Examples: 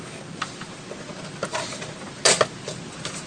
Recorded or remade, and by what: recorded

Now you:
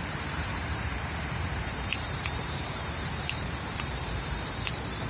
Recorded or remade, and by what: remade, vocoder, BigVGAN v2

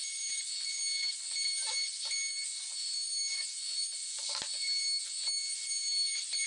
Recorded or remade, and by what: recorded